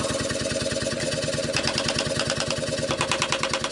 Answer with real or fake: real